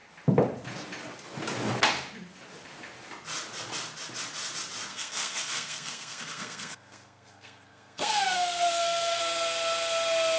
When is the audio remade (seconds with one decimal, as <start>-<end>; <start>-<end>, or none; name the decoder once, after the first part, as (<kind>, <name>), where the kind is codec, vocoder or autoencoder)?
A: 4.9-9.2 (codec, SNAC)